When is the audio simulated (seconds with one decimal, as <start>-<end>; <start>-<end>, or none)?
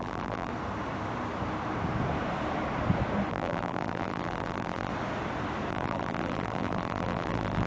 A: 0.0-0.5; 3.3-4.9; 5.7-7.7